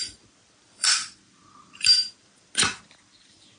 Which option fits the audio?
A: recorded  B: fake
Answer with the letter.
B